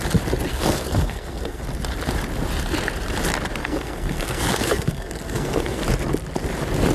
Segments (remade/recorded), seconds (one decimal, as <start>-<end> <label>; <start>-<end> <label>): 0.0-0.5 recorded; 0.5-1.6 remade; 1.6-3.6 recorded; 3.6-5.8 remade; 5.8-6.9 recorded